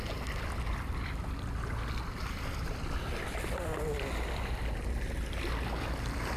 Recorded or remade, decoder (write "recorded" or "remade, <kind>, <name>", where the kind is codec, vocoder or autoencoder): recorded